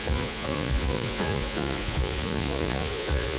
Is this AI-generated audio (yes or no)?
yes